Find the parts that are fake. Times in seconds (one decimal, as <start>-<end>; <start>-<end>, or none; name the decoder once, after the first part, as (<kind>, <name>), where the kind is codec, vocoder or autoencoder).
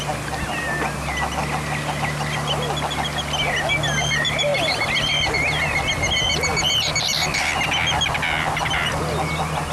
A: none